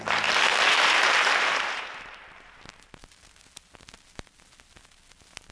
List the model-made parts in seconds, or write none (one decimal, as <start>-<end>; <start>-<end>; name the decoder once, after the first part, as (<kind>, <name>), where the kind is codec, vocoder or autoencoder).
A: 0.5-3.1 (vocoder, BigVGAN v2)

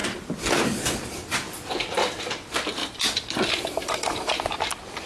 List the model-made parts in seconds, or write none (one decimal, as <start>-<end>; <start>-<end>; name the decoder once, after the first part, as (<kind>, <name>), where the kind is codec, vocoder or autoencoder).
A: none

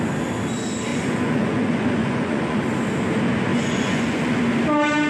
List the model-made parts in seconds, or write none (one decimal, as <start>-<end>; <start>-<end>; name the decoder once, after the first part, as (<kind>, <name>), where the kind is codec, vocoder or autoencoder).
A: 0.9-2.6 (vocoder, Vocos); 3.5-4.4

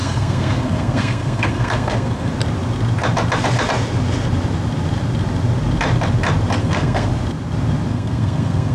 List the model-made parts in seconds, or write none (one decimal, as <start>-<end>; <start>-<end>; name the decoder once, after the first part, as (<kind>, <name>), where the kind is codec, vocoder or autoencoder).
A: 0.0-2.3 (codec, SNAC); 6.6-7.1; 7.9-8.7

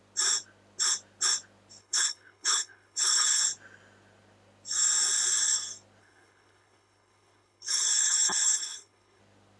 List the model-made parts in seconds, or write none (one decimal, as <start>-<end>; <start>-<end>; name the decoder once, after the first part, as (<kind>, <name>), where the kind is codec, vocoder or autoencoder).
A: 1.8-3.4 (codec, HILCodec); 6.0-9.2